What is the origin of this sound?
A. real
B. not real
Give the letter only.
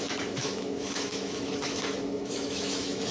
B